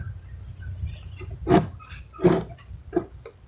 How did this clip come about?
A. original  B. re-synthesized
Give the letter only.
A